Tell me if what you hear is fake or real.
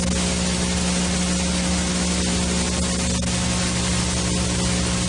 real